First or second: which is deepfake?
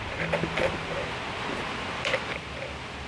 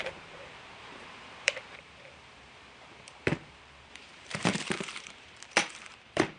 second